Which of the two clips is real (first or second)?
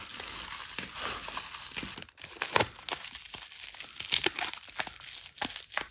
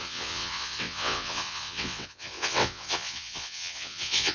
first